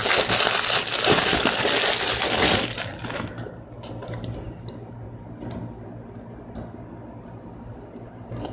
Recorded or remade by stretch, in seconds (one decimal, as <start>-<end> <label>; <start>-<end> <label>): 0.0-8.5 recorded